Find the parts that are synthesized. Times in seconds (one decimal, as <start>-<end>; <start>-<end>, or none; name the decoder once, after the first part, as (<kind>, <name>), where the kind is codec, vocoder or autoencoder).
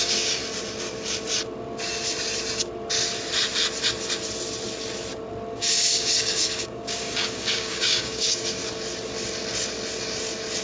0.0-0.4 (codec, DAC); 5.6-8.6